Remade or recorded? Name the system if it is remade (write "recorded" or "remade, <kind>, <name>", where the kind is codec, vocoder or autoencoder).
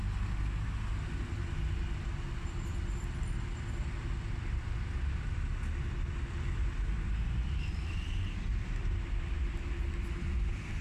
recorded